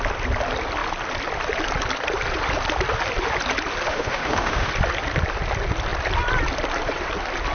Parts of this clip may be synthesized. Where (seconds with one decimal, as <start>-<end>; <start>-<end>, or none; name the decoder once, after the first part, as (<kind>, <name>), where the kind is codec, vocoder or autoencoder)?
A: 3.9-4.7 (autoencoder, DAC-VAE)